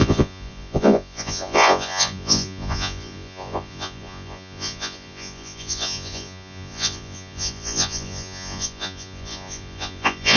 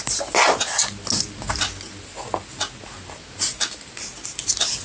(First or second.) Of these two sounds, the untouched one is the second